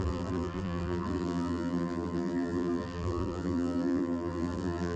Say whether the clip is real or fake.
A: fake